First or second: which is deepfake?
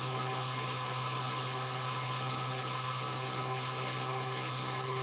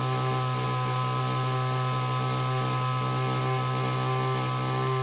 first